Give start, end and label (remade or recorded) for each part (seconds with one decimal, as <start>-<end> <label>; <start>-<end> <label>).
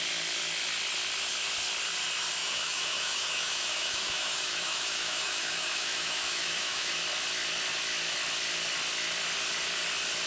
0.0-2.4 recorded; 2.4-6.9 remade; 6.9-10.3 recorded